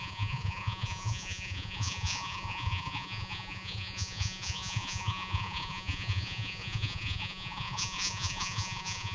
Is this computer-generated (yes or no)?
yes